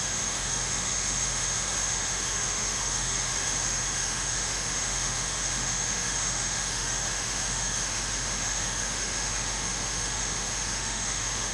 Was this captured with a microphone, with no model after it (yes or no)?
no